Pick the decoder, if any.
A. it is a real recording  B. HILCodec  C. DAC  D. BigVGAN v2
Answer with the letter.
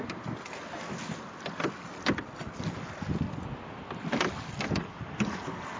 A